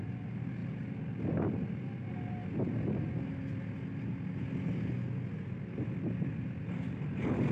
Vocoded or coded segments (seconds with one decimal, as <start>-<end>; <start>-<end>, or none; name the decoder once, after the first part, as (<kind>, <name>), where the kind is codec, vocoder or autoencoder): none